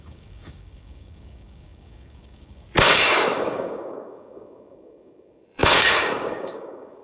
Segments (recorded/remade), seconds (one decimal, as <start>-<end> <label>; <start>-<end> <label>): 0.0-7.0 remade